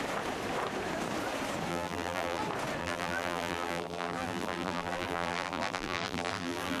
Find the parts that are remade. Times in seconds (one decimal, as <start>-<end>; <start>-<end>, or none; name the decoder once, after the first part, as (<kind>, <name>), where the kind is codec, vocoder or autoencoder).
1.7-2.4 (vocoder, BigVGAN v2); 2.8-6.8